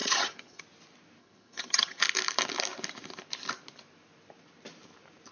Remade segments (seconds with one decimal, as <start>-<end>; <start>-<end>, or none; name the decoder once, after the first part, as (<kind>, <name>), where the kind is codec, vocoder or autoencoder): 0.0-0.6 (vocoder, HiFi-GAN); 1.2-2.0

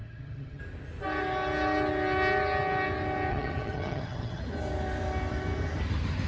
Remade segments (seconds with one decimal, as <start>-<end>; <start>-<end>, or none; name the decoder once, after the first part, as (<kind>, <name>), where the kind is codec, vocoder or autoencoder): 0.0-0.6 (vocoder, HiFi-GAN); 3.3-4.4

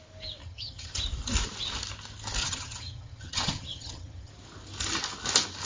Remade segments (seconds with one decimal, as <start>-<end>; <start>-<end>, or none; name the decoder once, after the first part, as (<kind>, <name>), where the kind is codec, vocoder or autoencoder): 0.4-0.9 (vocoder, HiFi-GAN); 2.4-4.3

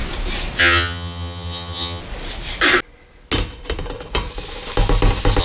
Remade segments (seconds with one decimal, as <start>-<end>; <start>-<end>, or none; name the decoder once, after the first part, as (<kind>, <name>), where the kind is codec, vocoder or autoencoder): 0.6-2.0 (vocoder, HiFi-GAN)

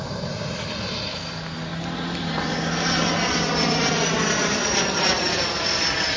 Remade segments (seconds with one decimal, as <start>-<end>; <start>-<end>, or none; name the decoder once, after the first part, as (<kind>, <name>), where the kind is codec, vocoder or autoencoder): none

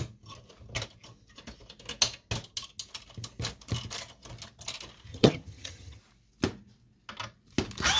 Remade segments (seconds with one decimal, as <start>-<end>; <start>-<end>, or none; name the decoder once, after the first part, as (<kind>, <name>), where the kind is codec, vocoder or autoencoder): 5.1-6.0 (vocoder, HiFi-GAN)

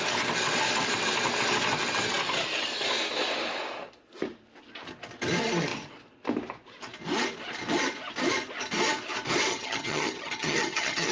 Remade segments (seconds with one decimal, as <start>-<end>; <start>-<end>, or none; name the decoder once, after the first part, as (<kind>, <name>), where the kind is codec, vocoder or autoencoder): 9.5-11.1 (vocoder, HiFi-GAN)